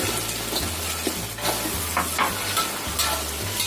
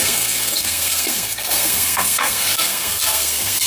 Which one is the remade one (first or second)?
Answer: second